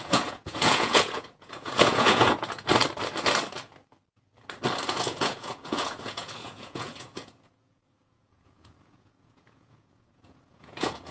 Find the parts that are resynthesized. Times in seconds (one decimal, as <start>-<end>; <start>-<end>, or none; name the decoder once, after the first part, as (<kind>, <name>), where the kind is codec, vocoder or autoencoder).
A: 0.0-2.7 (vocoder, Vocos); 4.9-11.1